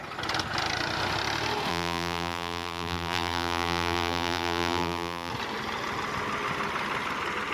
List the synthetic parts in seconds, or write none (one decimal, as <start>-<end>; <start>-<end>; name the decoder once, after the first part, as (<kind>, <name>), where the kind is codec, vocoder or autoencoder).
1.7-5.3 (vocoder, BigVGAN v2)